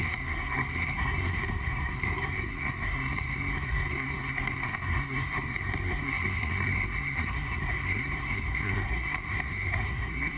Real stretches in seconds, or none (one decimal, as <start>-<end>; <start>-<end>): none